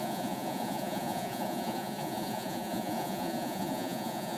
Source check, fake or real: fake